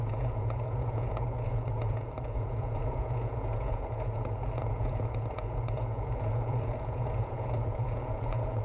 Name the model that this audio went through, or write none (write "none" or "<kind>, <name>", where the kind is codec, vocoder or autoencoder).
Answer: vocoder, Vocos